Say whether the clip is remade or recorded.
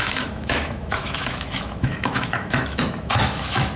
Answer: remade